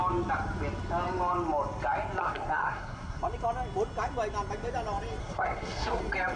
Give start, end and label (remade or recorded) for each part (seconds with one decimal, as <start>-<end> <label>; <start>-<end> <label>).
0.0-2.2 recorded; 2.2-3.2 remade; 3.2-5.2 recorded; 5.2-6.0 remade; 6.0-6.4 recorded